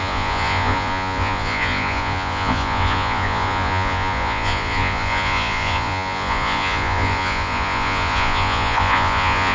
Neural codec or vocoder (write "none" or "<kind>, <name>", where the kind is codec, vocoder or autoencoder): vocoder, Vocos